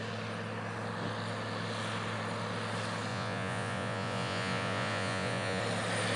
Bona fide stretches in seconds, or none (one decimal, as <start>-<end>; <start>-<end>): 0.0-3.1; 5.6-6.2